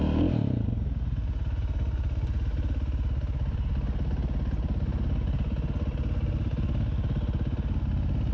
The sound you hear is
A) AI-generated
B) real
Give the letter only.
B